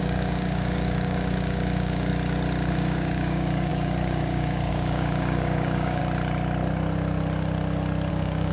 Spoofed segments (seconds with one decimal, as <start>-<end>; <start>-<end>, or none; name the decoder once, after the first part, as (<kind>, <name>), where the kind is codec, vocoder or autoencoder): 0.0-2.1 (codec, DAC); 2.7-6.0; 8.1-8.5